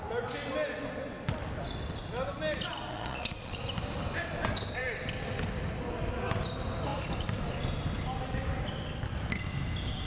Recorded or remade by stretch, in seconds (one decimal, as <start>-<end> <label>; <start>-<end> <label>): 0.0-2.9 recorded; 2.9-3.6 remade; 3.6-10.1 recorded